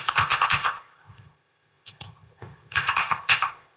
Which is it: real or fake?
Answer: fake